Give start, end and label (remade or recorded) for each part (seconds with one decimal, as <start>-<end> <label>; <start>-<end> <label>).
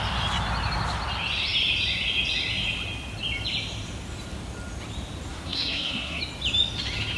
0.0-5.3 recorded; 5.3-6.2 remade; 6.2-7.2 recorded